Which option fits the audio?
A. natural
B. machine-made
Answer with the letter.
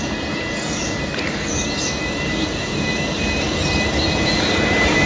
B